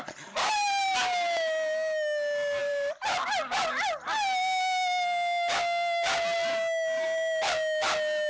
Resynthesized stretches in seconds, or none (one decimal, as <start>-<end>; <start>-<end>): 2.6-3.4